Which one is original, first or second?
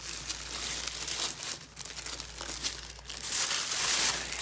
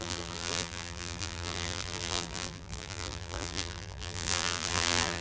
first